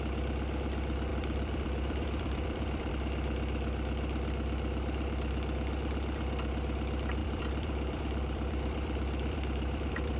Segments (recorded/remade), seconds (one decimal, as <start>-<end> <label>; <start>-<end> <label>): 0.0-1.1 recorded; 1.1-2.9 remade; 2.9-7.2 recorded; 7.2-10.2 remade